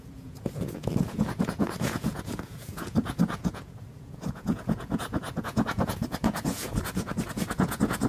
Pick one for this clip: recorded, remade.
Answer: remade